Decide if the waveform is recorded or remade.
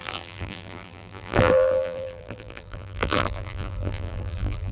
remade